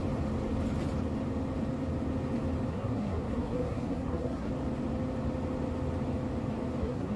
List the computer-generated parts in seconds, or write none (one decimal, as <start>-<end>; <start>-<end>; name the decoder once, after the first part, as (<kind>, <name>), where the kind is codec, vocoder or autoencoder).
2.7-4.5 (codec, SNAC); 6.8-7.2